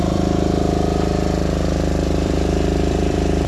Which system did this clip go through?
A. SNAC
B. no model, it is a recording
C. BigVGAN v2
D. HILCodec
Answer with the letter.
C